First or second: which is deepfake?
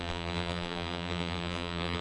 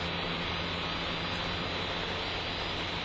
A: first